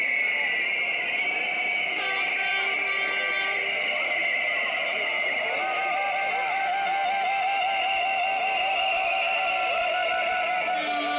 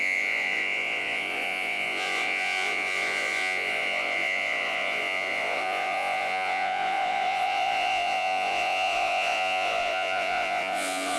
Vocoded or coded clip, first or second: second